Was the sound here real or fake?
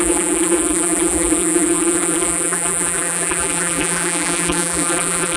fake